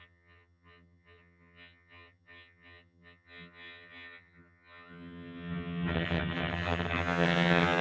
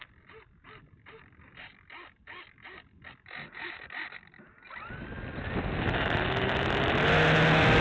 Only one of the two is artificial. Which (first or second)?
first